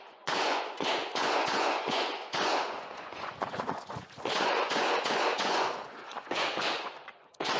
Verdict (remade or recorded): remade